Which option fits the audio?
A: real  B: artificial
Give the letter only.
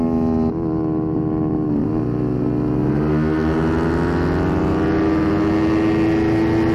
A